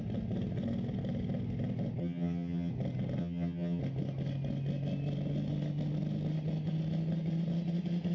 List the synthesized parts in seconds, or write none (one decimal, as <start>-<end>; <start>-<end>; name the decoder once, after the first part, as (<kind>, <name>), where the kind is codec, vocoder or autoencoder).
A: 2.0-2.7 (vocoder, HiFi-GAN); 3.2-3.8